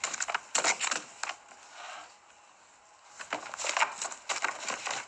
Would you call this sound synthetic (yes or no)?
no